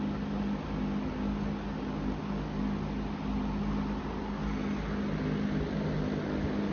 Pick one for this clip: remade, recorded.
recorded